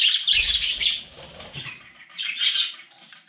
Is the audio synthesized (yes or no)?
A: yes